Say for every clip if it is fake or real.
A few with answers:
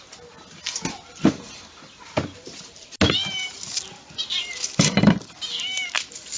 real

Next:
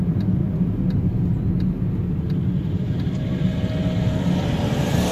real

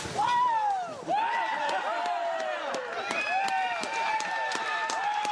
real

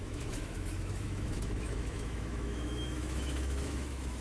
fake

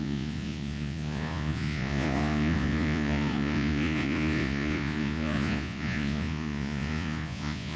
fake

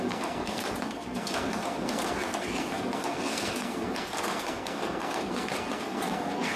fake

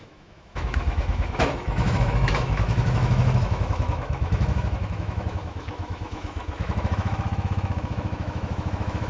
fake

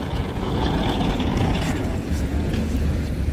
fake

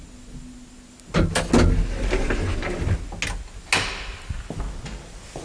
real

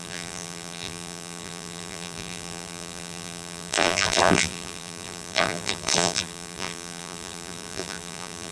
fake